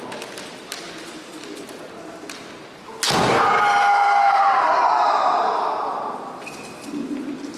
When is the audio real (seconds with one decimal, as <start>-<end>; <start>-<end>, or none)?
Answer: 0.0-3.8; 4.4-7.6